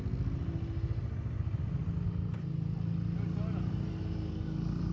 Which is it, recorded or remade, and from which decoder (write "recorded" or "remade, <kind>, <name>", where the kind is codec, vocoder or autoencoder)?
recorded